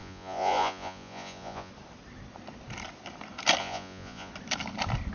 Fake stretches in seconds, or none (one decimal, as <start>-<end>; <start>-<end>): 0.0-1.7; 3.6-4.3